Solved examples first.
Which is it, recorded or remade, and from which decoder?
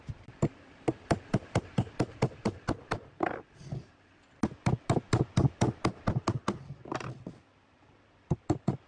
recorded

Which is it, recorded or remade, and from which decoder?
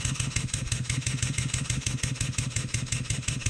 remade, autoencoder, DAC-VAE